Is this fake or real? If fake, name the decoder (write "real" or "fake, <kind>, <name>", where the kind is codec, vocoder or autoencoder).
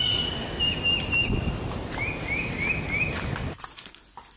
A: real